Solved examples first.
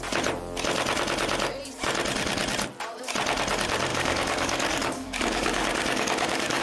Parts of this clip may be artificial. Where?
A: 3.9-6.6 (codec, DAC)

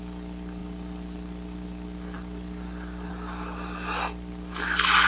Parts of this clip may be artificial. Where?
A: none